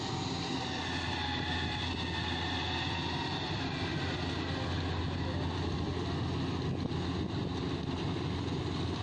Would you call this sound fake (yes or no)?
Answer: no